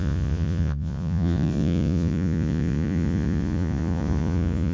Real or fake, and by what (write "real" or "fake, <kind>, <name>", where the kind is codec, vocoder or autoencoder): fake, vocoder, Vocos